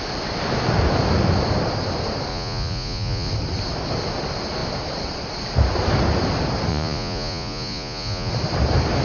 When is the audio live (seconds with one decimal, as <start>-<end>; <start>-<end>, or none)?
0.0-2.3; 3.3-6.7; 8.3-9.0